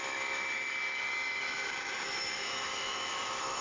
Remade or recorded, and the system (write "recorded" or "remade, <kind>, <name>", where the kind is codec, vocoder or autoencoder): remade, autoencoder, DAC-VAE